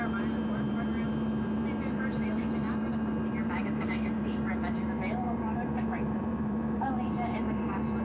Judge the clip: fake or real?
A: fake